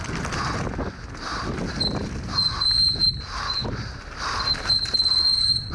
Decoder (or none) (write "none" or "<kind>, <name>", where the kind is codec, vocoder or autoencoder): none